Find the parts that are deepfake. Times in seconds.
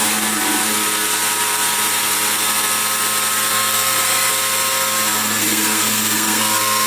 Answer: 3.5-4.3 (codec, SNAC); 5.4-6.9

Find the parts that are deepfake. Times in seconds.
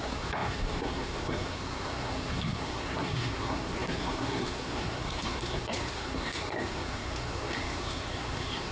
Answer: 0.0-8.7 (codec, SNAC)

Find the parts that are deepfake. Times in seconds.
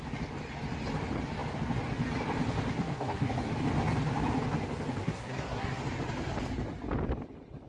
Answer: 2.8-3.3 (codec, SNAC); 5.0-5.8